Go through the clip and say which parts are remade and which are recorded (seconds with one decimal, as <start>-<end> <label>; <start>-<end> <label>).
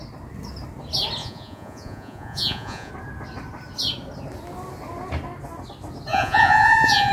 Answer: 0.0-1.2 recorded; 1.2-2.9 remade; 2.9-6.1 recorded; 6.1-7.1 remade